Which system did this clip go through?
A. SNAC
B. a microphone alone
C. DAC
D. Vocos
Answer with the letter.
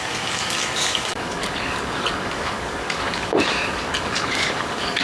C